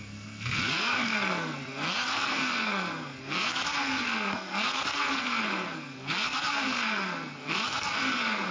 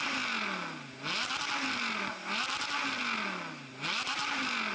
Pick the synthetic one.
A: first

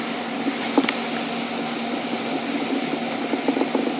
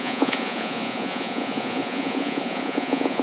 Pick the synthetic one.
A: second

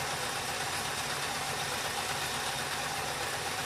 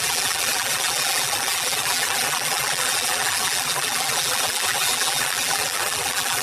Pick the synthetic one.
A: second